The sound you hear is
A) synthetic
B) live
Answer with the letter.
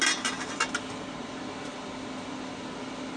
B